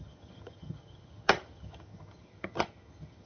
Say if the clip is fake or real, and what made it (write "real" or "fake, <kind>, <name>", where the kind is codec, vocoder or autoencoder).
fake, vocoder, HiFi-GAN